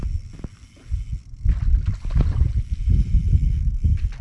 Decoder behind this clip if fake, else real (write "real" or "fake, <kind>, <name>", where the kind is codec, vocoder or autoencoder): fake, vocoder, BigVGAN v2